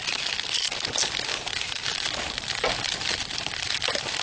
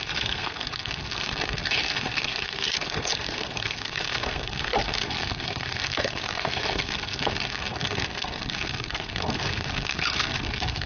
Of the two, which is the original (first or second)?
first